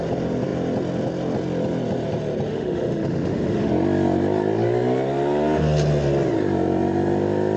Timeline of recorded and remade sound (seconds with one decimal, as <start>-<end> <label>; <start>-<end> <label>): 0.0-2.5 recorded; 2.5-3.7 remade; 3.7-7.6 recorded